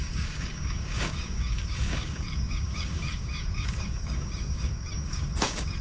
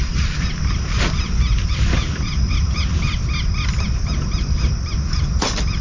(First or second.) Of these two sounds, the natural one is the second